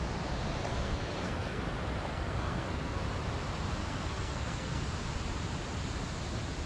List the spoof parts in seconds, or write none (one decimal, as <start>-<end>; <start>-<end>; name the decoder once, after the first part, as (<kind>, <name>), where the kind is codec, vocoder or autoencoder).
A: 0.7-1.6 (codec, SNAC); 2.1-3.0; 3.8-4.8